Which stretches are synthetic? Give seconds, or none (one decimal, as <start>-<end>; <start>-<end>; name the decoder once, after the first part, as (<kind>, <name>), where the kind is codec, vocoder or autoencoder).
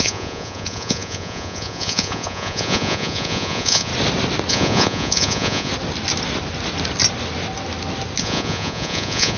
0.0-3.9 (vocoder, Vocos); 4.5-5.7; 8.2-9.4